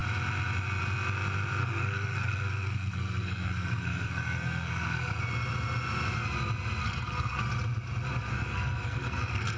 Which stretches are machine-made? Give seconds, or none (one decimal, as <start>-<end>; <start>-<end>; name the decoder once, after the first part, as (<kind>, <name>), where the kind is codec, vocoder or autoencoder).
1.6-5.2 (codec, SNAC); 6.8-7.4; 8.3-9.6